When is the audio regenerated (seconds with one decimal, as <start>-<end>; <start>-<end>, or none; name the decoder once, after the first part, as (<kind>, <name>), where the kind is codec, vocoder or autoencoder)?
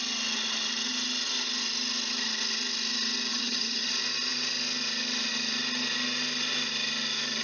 3.3-3.9 (vocoder, HiFi-GAN)